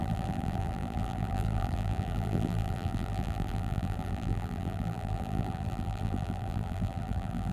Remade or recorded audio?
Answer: remade